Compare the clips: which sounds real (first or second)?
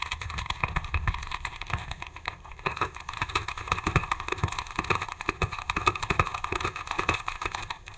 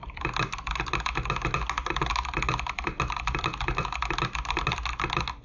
second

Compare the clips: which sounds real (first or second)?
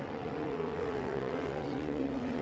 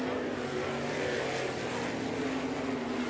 second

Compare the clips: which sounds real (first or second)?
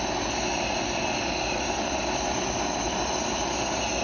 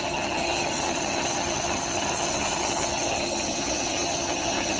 first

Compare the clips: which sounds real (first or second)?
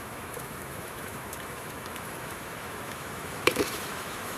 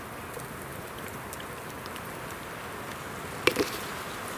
second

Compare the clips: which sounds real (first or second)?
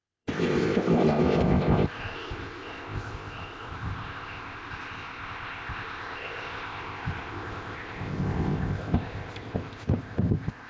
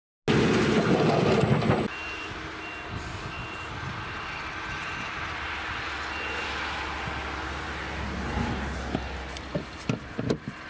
second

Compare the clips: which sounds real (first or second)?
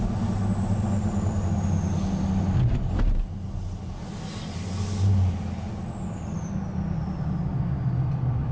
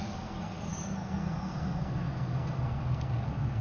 first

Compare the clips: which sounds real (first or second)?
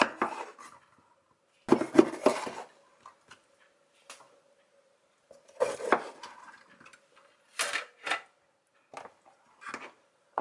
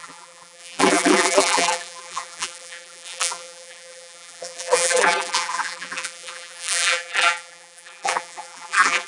first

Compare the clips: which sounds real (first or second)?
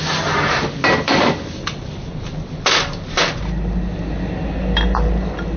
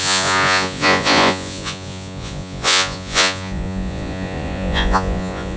first